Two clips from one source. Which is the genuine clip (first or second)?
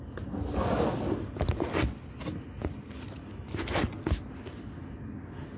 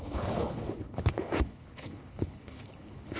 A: first